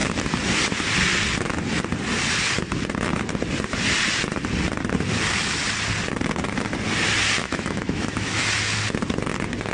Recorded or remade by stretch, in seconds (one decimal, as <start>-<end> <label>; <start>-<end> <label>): 0.0-7.4 recorded; 7.4-8.4 remade; 8.4-9.7 recorded